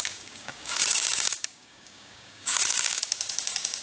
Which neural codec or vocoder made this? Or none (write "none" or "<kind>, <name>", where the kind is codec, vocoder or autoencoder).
codec, DAC